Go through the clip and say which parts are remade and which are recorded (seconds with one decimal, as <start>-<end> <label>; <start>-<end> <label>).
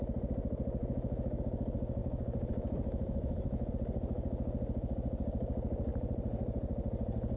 0.0-0.8 recorded; 0.8-1.4 remade; 1.4-2.0 recorded; 2.0-3.7 remade; 3.7-7.4 recorded